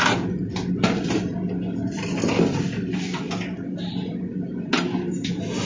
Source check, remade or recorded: recorded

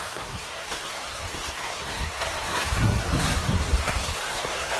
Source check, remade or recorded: remade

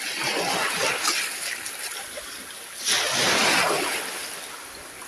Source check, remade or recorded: recorded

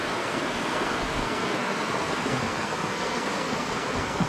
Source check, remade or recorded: remade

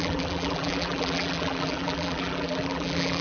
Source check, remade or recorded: remade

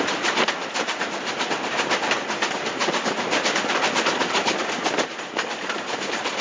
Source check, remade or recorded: recorded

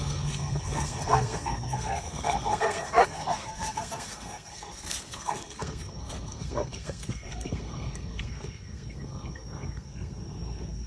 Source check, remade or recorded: remade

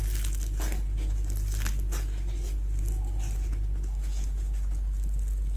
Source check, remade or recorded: recorded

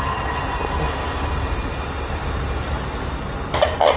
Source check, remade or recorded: recorded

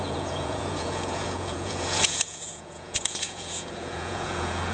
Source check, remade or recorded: remade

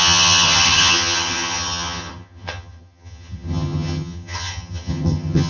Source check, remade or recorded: remade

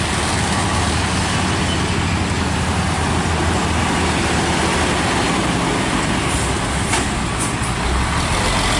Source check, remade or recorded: recorded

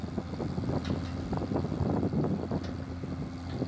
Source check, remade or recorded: recorded